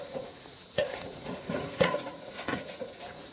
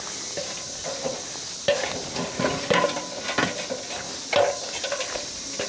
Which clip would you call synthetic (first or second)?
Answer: first